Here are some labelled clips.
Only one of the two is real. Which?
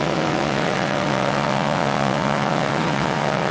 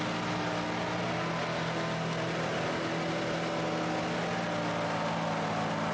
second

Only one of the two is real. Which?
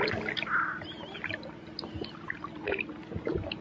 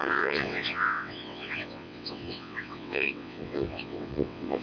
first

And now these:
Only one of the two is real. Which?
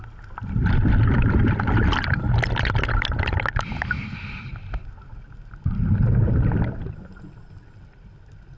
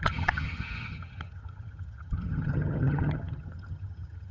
first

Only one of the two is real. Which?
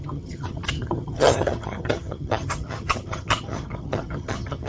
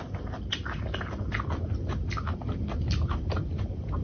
second